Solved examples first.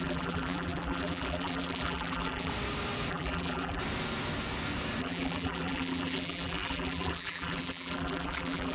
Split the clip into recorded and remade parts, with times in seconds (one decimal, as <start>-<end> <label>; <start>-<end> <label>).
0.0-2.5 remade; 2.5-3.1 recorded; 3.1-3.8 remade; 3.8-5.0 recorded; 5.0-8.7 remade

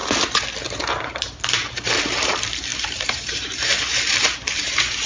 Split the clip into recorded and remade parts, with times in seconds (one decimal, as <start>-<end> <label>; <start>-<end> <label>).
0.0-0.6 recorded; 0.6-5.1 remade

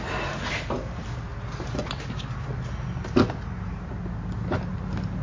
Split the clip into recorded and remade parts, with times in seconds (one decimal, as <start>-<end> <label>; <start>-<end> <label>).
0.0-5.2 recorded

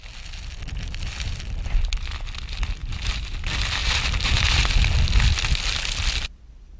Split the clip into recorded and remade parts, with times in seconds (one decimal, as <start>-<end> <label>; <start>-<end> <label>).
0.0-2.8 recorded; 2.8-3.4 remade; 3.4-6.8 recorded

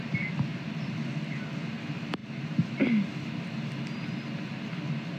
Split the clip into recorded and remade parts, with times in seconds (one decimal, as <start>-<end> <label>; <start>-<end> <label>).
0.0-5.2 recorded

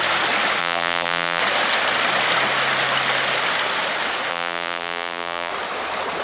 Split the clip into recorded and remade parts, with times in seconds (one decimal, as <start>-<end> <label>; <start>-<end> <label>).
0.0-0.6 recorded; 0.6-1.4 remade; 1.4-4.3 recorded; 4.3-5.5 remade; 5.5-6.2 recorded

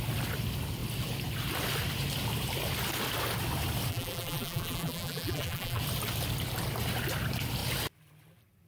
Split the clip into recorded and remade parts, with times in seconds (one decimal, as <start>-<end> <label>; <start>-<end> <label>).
0.0-3.9 recorded; 3.9-5.8 remade; 5.8-8.7 recorded

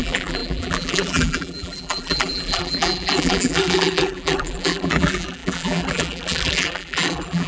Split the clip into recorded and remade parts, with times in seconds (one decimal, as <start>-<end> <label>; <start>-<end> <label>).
0.0-7.5 remade